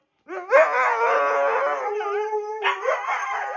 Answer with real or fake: real